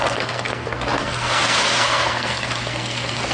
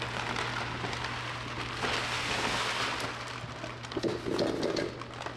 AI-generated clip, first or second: first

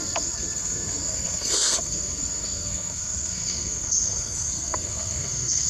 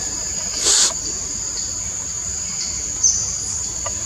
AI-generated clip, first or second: first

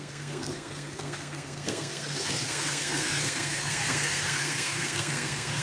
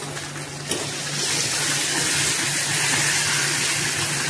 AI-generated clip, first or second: first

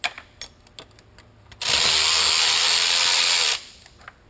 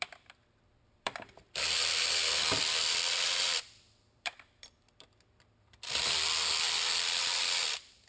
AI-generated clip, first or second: second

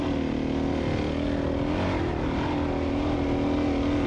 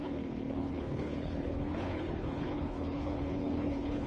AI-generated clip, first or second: second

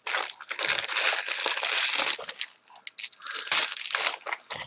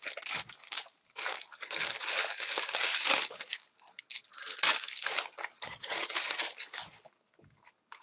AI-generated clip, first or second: second